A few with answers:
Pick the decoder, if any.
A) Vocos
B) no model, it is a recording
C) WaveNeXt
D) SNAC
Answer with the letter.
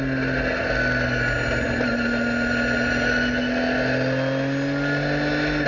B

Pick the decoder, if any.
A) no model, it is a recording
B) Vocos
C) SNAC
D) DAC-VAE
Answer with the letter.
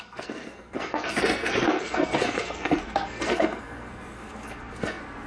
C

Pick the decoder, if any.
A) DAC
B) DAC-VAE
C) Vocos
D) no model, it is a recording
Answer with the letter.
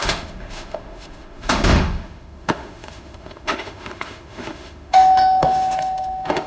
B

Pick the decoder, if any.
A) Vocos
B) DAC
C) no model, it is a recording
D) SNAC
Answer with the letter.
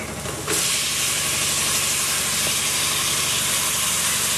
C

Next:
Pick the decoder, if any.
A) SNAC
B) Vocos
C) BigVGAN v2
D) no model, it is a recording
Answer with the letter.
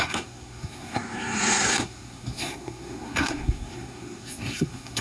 A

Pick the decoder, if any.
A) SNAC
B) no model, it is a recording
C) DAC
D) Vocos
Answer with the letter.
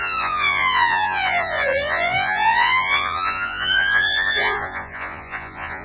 D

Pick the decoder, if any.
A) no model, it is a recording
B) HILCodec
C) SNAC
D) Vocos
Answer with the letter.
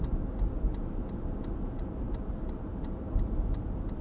A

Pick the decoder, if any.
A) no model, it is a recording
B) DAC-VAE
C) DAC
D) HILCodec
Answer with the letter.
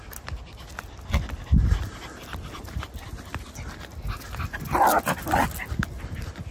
A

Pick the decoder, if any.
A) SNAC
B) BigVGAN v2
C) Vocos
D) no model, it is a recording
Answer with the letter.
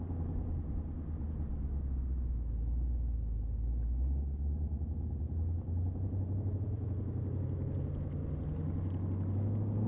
D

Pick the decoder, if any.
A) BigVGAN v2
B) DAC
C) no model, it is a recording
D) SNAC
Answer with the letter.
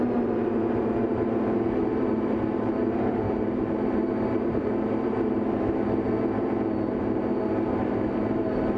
A